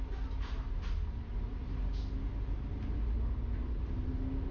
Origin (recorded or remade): recorded